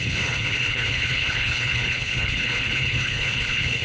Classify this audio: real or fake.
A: fake